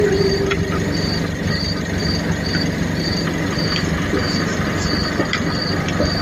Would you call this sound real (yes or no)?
yes